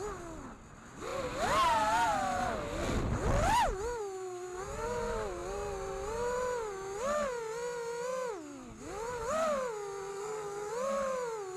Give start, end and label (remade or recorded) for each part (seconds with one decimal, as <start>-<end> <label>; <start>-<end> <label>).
0.0-10.1 recorded; 10.1-10.7 remade; 10.7-11.6 recorded